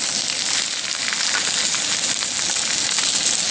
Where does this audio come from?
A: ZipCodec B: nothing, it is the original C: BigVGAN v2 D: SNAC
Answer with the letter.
B